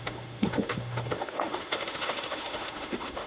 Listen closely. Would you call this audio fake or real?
fake